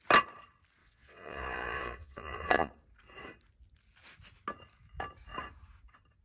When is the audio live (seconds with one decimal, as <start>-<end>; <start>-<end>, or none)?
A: 0.0-0.8; 2.7-6.2